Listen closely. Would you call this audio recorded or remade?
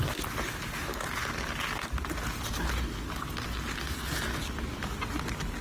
recorded